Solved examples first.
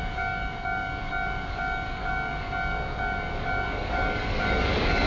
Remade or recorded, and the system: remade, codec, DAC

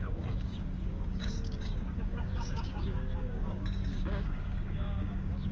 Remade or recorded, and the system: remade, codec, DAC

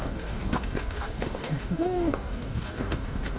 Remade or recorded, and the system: remade, codec, DAC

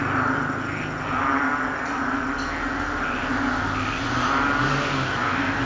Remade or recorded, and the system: recorded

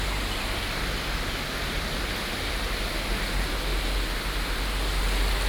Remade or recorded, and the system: recorded